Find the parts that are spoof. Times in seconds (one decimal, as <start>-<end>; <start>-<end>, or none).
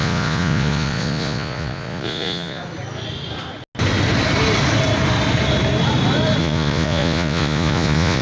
0.0-2.6; 6.4-8.2